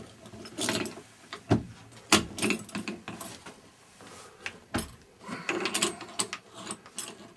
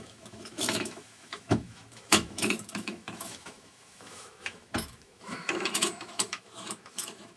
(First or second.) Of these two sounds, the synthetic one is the second